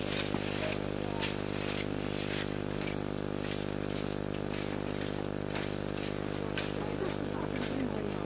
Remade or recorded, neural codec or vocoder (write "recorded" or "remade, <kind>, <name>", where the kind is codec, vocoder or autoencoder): recorded